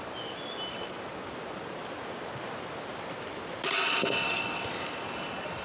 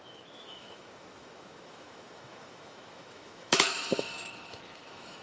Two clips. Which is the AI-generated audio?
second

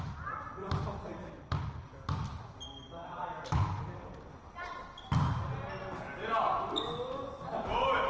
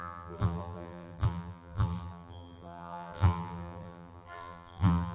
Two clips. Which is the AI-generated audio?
second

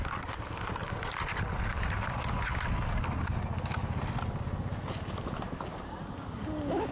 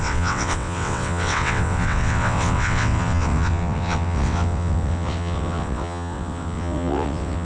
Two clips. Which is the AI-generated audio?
second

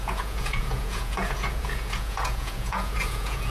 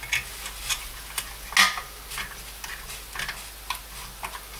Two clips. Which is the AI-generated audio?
first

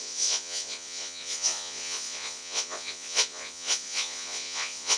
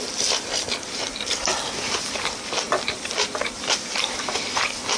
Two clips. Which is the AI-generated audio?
first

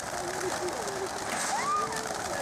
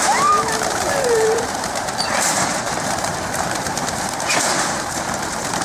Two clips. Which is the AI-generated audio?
second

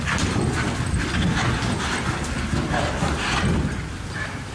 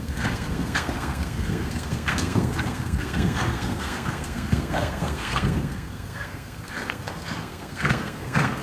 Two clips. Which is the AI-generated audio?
second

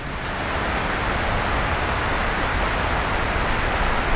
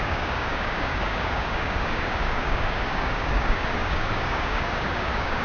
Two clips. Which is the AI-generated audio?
second